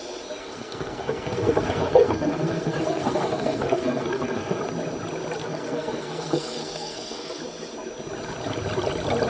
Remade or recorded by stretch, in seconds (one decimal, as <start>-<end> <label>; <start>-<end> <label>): 0.0-0.4 recorded; 0.4-4.6 remade; 4.6-5.4 recorded; 5.4-7.4 remade; 7.4-9.3 recorded